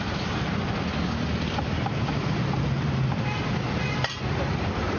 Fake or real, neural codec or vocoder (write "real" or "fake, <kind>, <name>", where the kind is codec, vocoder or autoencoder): fake, vocoder, BigVGAN v2